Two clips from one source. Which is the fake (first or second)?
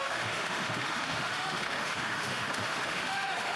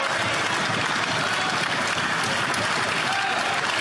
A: first